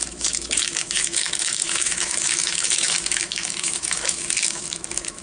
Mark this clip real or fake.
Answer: fake